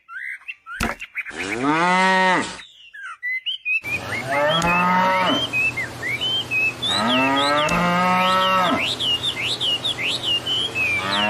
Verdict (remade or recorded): recorded